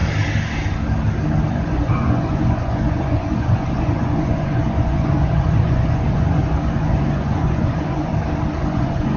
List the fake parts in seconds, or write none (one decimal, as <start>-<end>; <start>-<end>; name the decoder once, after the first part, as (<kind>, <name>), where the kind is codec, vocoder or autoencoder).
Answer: 1.5-8.1 (vocoder, Vocos); 8.6-9.2